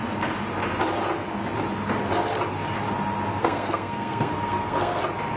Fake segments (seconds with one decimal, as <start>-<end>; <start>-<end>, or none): 3.4-5.0